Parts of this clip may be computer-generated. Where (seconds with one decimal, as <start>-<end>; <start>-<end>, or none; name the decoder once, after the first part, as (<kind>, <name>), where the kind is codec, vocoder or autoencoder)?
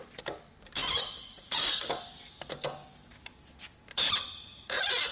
0.8-2.0 (vocoder, Vocos); 4.5-5.1